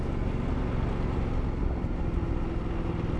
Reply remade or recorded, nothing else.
recorded